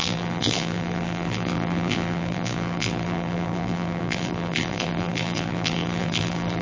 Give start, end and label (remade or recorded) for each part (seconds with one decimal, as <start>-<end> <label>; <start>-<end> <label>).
0.0-6.6 remade